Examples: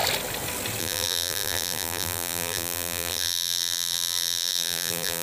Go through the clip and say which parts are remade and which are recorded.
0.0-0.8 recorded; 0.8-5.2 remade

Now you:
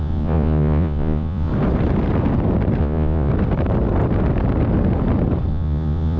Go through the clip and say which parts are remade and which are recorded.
0.0-1.5 remade; 1.5-2.8 recorded; 2.8-3.3 remade; 3.3-5.5 recorded; 5.5-6.2 remade

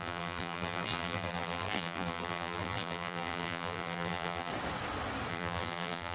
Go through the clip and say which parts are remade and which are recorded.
0.0-4.5 remade; 4.5-5.3 recorded; 5.3-6.1 remade

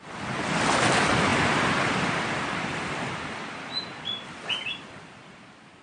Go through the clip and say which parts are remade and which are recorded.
0.0-5.8 recorded